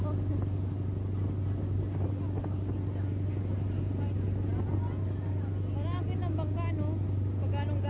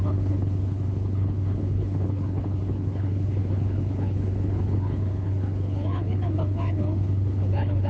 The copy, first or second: second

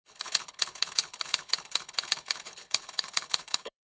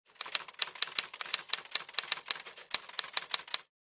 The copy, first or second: first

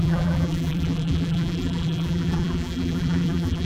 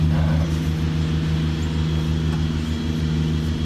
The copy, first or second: first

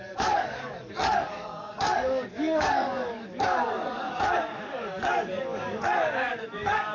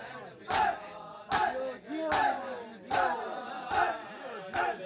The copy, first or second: first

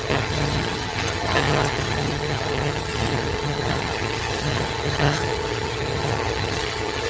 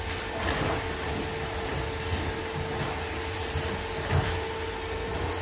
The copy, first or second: first